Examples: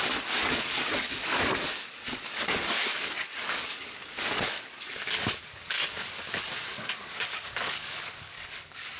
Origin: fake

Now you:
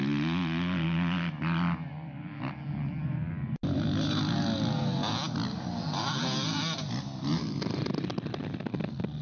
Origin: real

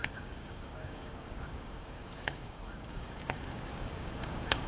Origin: fake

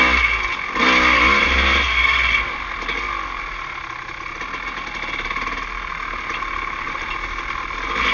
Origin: real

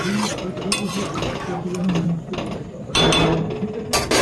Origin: real